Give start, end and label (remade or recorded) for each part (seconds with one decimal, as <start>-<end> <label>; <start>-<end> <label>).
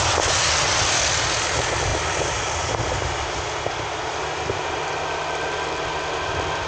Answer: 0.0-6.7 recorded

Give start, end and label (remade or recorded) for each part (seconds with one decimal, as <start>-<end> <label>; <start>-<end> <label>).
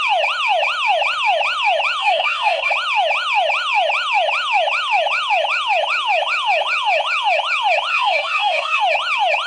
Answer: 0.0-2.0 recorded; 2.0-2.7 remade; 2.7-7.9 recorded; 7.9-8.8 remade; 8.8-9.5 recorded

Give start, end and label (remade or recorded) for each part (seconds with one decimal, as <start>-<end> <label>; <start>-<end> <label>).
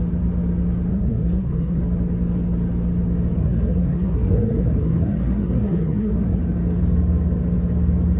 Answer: 0.0-0.9 recorded; 0.9-1.8 remade; 1.8-3.4 recorded; 3.4-6.4 remade; 6.4-8.2 recorded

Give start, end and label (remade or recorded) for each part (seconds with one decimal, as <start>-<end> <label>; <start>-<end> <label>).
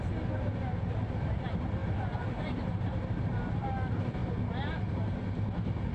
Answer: 0.0-1.8 recorded; 1.8-3.5 remade; 3.5-4.2 recorded; 4.2-5.9 remade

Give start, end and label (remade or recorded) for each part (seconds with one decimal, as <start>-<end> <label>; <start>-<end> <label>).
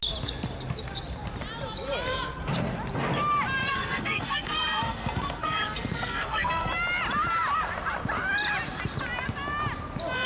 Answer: 0.0-3.6 recorded; 3.6-6.7 remade; 6.7-10.3 recorded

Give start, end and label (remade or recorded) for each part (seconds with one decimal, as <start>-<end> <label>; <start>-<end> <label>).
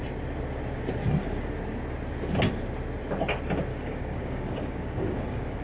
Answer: 0.0-3.7 recorded; 3.7-5.6 remade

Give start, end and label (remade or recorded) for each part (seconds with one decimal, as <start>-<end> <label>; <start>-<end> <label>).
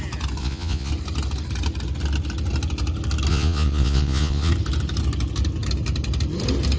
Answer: 0.0-0.4 recorded; 0.4-0.9 remade; 0.9-3.3 recorded; 3.3-4.5 remade; 4.5-6.8 recorded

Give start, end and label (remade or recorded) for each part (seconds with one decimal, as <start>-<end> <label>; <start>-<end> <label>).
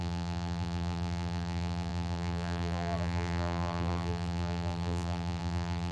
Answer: 0.0-5.9 remade